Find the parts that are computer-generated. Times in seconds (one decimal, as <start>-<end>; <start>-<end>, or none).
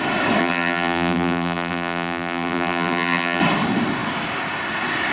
0.4-3.4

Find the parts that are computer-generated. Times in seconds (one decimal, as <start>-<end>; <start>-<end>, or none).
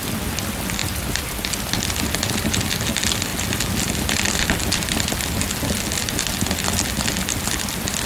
0.8-1.5; 3.3-5.5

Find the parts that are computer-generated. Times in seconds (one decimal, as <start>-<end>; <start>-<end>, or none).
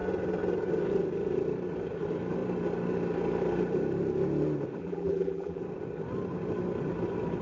4.8-5.6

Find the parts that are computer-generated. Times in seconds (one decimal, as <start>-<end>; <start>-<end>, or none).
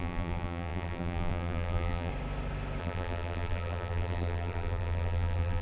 0.0-2.1; 2.8-5.6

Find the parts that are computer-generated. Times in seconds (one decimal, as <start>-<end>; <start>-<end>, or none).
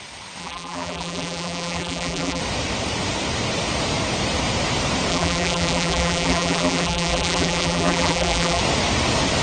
0.4-2.4; 5.1-8.6